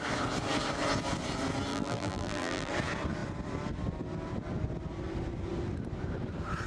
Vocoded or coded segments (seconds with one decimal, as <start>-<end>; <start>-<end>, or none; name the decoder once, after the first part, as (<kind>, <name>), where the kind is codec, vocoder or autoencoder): 1.7-2.7 (vocoder, BigVGAN v2)

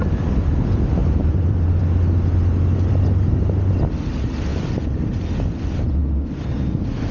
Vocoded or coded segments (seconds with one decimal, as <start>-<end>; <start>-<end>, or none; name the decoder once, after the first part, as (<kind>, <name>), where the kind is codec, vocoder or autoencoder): 1.0-1.8 (vocoder, BigVGAN v2); 4.5-5.0

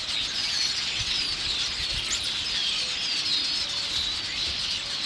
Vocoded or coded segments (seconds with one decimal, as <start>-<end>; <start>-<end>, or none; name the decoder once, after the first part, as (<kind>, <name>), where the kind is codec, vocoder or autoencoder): 0.4-1.2 (vocoder, WaveNeXt)

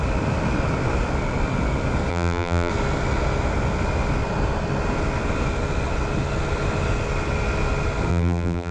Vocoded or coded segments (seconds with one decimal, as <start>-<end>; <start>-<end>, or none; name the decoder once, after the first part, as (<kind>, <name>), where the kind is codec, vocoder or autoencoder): 2.1-2.7 (vocoder, BigVGAN v2); 8.1-8.7